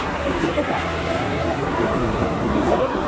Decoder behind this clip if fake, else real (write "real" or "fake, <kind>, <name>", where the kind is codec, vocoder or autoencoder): fake, codec, SNAC